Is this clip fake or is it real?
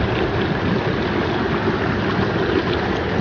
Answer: real